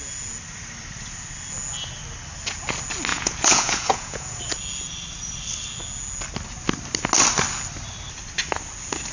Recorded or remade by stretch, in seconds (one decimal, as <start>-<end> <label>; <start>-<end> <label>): 0.0-3.1 recorded; 3.1-4.4 remade; 4.4-9.1 recorded